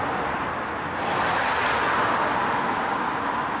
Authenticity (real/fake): real